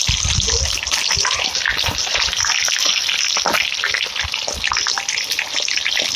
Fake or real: real